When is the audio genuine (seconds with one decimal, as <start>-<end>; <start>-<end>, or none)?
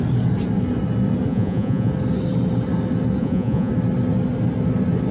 0.0-1.3; 1.9-3.2; 3.7-5.1